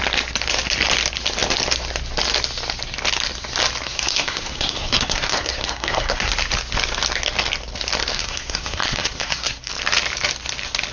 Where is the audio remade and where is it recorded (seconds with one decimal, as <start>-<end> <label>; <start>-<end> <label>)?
0.0-3.8 recorded; 3.8-6.3 remade; 6.3-8.1 recorded; 8.1-9.7 remade; 9.7-10.9 recorded

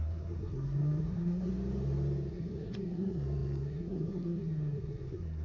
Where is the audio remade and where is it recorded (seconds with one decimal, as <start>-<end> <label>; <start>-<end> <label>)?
0.0-1.5 remade; 1.5-2.3 recorded; 2.3-5.4 remade

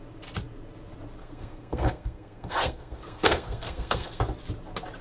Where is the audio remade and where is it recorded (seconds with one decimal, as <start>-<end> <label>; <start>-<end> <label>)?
0.0-1.2 recorded; 1.2-4.2 remade; 4.2-5.0 recorded

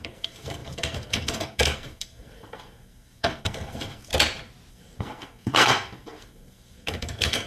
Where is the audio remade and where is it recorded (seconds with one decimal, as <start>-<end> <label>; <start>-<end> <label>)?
0.0-4.1 remade; 4.1-4.7 recorded; 4.7-7.5 remade

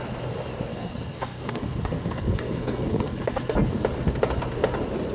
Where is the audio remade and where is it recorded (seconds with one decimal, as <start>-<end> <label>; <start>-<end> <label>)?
0.0-0.7 recorded; 0.7-3.8 remade; 3.8-5.1 recorded

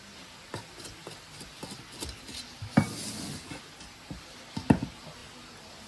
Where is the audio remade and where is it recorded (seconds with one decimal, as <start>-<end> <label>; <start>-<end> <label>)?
0.0-5.9 recorded